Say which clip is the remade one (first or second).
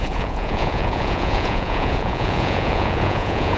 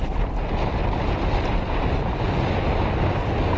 first